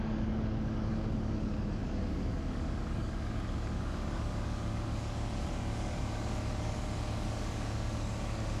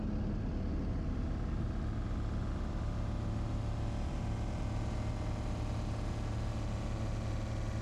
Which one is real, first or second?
second